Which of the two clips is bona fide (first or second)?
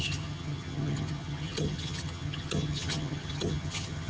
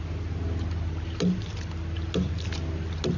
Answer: second